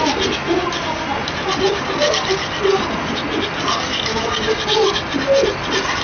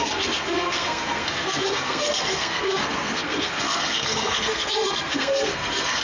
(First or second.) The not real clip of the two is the second